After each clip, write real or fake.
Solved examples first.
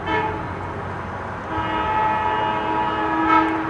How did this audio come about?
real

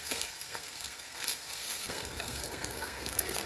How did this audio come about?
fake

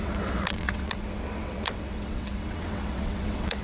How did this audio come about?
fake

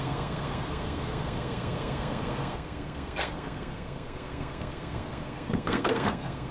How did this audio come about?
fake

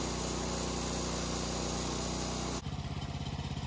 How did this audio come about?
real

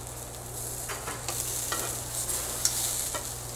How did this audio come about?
real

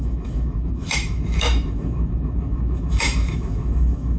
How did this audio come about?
fake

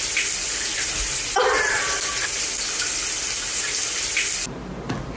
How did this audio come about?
real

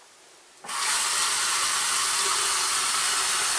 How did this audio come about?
real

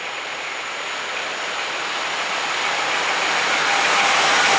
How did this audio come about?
real